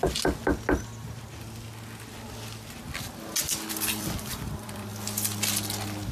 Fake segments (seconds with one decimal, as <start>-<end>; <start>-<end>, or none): 3.7-4.9